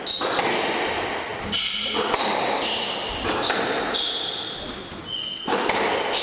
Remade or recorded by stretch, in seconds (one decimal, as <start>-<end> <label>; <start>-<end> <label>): 0.0-6.2 recorded